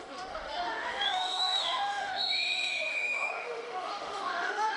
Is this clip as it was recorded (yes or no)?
no